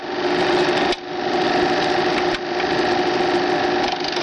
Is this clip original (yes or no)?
yes